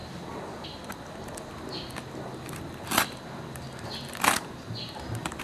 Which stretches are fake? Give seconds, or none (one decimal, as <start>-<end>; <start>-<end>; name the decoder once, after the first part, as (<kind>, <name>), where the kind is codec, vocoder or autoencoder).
none